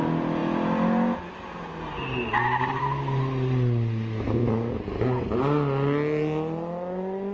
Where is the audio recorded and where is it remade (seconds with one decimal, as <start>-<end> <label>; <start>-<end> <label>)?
0.0-7.3 recorded